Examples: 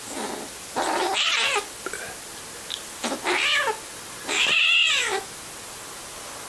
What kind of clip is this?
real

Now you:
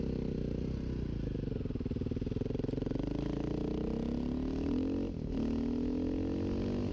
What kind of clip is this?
real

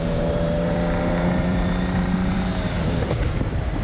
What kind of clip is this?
fake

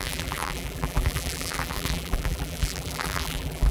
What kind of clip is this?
fake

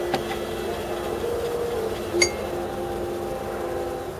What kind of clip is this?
real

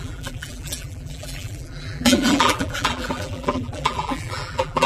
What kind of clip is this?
fake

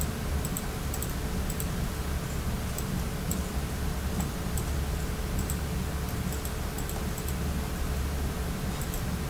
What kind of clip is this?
real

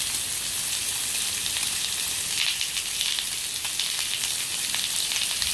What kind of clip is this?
real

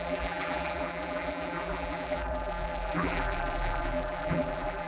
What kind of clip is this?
fake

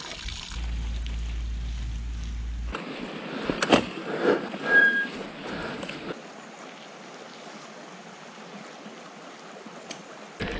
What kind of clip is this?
real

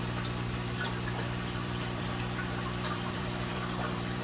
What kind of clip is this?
fake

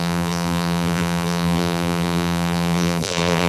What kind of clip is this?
fake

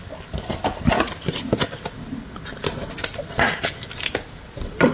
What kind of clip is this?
real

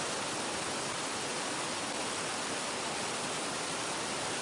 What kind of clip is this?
real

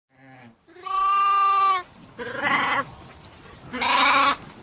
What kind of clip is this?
real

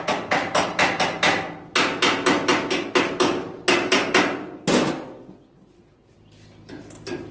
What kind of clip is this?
real